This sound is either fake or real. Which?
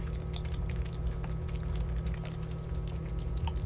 real